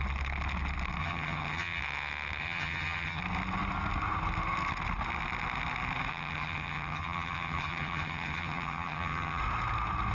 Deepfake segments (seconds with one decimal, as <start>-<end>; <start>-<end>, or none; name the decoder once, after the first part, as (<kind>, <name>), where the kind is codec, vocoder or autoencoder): 1.0-1.8 (vocoder, HiFi-GAN); 2.4-3.2; 6.1-9.4